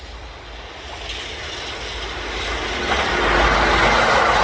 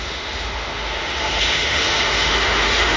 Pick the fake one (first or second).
second